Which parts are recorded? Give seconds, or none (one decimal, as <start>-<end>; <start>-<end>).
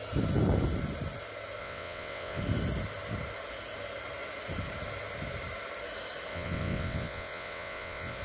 0.0-1.6; 2.4-6.3